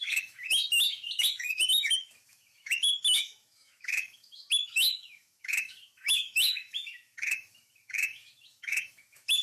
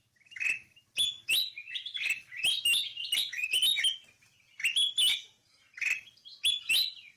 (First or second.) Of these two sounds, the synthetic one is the first